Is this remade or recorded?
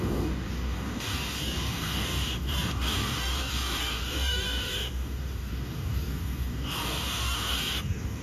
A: remade